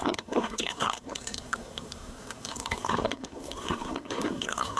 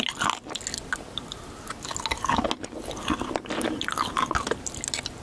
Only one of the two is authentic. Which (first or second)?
second